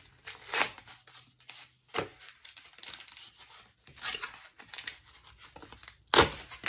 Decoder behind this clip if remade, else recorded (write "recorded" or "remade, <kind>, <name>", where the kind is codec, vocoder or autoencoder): recorded